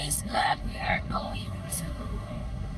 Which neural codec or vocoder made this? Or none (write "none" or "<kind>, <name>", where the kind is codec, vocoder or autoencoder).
codec, SNAC